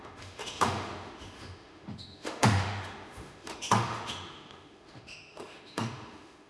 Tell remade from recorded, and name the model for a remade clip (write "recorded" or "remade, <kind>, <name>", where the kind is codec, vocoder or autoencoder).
remade, autoencoder, DAC-VAE